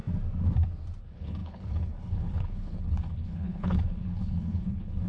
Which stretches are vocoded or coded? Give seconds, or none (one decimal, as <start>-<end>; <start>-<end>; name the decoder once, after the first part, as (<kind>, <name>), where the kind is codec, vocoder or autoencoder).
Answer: 1.0-5.1 (codec, HILCodec)